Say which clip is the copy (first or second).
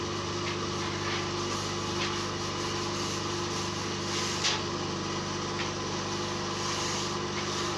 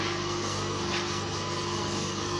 second